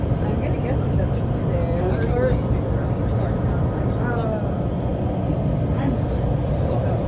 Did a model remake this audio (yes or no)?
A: no